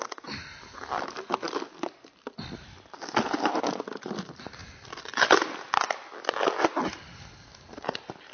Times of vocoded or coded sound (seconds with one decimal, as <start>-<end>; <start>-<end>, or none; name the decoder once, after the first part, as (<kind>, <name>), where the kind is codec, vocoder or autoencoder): none